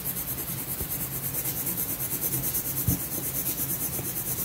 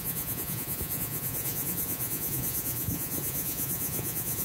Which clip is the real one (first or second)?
first